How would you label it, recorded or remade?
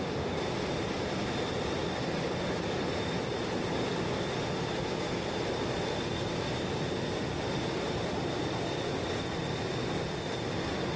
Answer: recorded